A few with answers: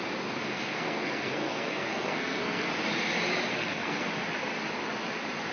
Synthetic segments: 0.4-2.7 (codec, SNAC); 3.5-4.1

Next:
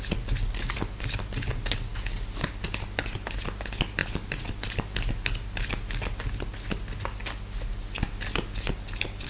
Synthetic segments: none